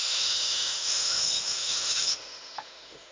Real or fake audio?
fake